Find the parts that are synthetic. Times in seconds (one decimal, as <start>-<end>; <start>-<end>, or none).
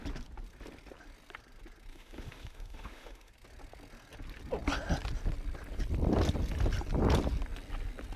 1.9-3.3